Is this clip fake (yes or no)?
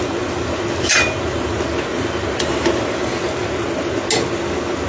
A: no